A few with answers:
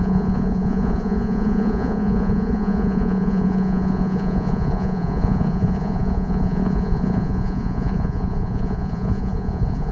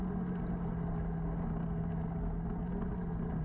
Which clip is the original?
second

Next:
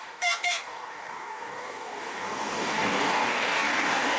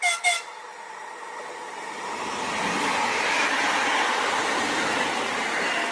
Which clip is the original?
second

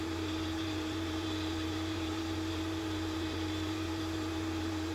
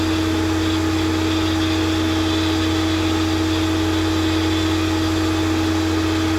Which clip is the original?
second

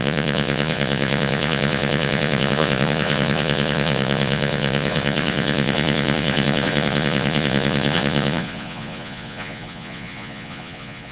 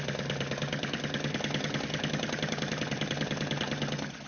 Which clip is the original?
second